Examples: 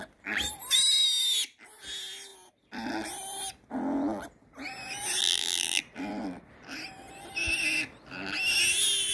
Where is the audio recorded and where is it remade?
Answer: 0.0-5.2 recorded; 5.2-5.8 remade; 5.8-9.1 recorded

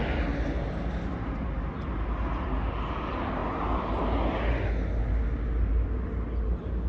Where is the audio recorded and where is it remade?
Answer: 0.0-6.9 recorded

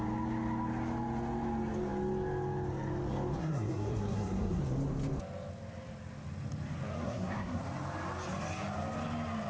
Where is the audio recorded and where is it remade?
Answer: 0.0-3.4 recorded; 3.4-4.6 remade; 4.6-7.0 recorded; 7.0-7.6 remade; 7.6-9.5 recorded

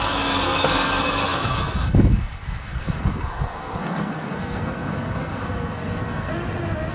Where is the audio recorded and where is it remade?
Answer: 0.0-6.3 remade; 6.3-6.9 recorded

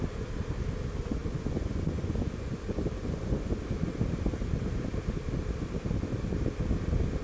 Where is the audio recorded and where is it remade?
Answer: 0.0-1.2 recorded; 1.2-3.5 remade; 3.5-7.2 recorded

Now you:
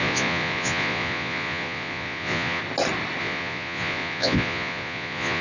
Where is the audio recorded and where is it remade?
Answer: 0.0-2.6 remade; 2.6-3.2 recorded; 3.2-5.4 remade

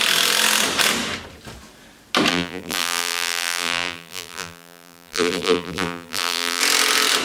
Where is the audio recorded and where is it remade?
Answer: 0.0-2.3 recorded; 2.3-6.6 remade; 6.6-7.2 recorded

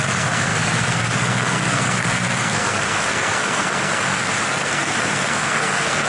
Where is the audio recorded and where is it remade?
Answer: 0.0-6.1 remade